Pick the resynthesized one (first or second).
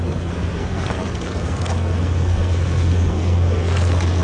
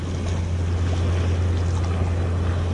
first